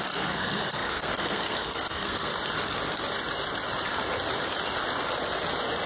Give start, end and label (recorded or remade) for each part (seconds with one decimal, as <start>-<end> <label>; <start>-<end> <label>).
0.0-2.3 remade; 2.3-5.9 recorded